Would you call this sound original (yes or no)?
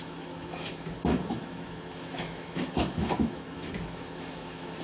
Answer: no